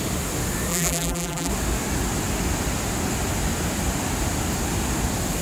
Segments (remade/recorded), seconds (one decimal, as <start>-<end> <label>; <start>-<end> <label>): 0.0-0.7 recorded; 0.7-1.5 remade; 1.5-5.4 recorded